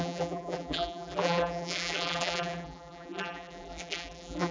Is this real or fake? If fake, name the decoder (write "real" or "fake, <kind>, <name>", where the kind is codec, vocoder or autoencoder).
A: fake, vocoder, BigVGAN v2